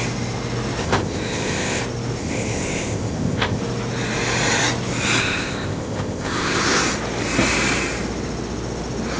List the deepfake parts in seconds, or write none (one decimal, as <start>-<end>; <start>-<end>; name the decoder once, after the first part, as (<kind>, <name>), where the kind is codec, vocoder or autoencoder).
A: 0.8-1.8 (codec, ZipCodec); 2.2-3.6; 5.2-6.8